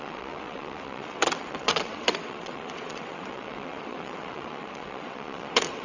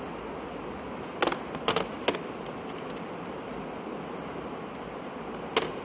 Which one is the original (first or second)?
second